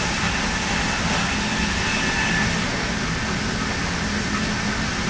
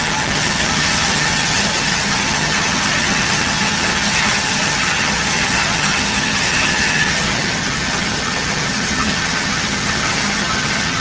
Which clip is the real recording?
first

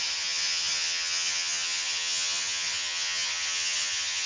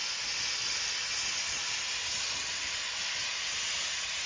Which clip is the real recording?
second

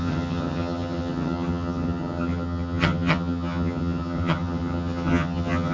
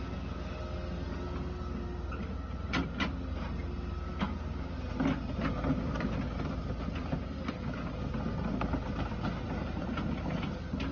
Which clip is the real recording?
second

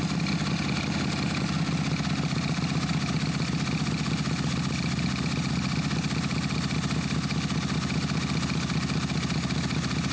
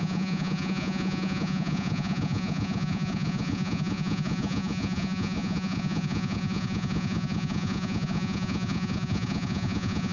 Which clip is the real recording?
first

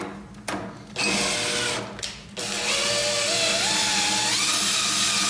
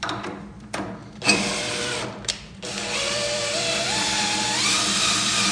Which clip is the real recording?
first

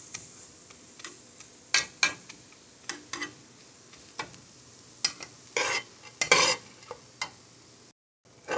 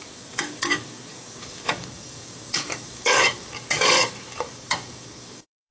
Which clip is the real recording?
first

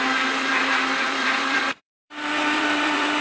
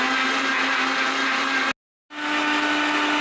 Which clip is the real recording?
second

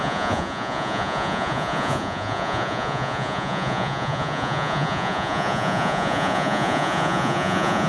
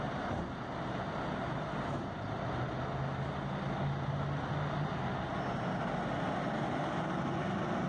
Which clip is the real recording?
second